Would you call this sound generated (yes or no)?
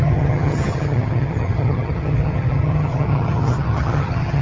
yes